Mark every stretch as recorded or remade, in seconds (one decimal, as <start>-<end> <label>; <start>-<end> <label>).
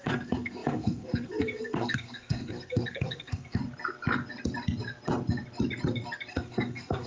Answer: 0.0-3.6 remade; 3.6-6.3 recorded; 6.3-7.1 remade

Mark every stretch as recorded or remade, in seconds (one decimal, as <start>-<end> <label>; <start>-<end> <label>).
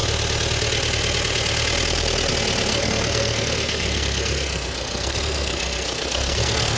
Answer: 0.0-2.7 recorded; 2.7-6.8 remade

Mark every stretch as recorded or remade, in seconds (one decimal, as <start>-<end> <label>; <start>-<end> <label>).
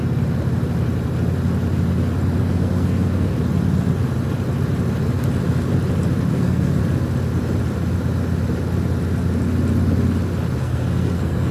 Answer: 0.0-2.4 recorded; 2.4-3.3 remade; 3.3-6.3 recorded; 6.3-6.8 remade; 6.8-10.6 recorded; 10.6-11.5 remade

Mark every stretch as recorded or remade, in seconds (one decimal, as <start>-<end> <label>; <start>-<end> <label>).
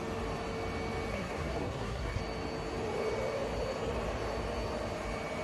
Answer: 0.0-1.1 recorded; 1.1-2.2 remade; 2.2-5.4 recorded